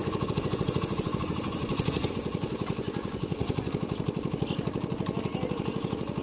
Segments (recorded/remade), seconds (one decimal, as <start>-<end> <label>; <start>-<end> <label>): 0.0-3.7 remade; 3.7-6.2 recorded